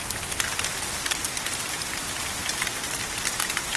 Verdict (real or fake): real